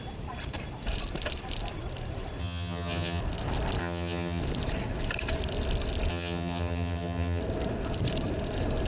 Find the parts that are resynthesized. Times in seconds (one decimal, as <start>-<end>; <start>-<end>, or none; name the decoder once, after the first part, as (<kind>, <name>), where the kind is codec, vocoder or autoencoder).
2.4-3.2 (vocoder, HiFi-GAN); 3.8-4.4; 6.1-7.4

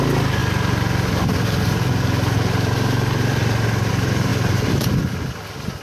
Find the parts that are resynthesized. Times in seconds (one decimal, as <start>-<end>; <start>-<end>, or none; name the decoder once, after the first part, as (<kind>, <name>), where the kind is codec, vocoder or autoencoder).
4.3-5.0 (vocoder, BigVGAN v2)

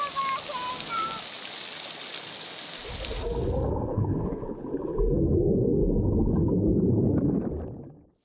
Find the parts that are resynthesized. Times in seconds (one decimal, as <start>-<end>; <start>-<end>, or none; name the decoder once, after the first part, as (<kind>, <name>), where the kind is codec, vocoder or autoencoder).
3.9-4.7 (codec, HILCodec)